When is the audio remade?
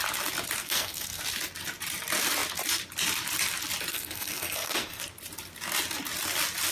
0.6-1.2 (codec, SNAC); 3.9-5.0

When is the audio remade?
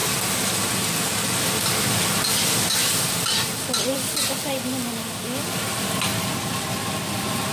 none